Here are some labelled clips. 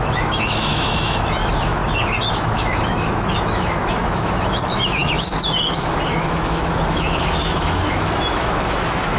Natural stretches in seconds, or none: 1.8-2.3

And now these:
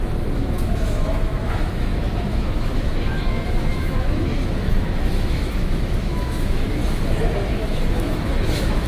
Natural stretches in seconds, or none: 6.8-7.5

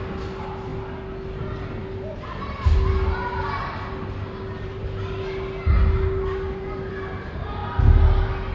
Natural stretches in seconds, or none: 0.0-8.5

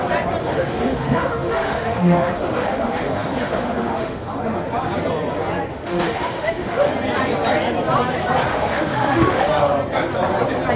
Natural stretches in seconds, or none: 0.0-0.4; 4.4-5.7; 6.9-8.5; 9.6-10.8

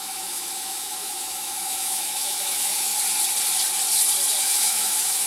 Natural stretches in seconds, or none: 2.9-4.4

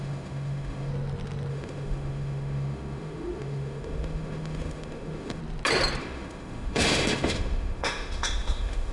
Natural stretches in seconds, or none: 0.9-1.5; 5.4-6.0